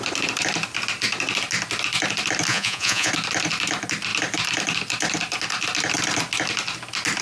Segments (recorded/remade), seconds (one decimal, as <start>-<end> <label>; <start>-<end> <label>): 0.0-2.5 recorded; 2.5-3.1 remade; 3.1-7.2 recorded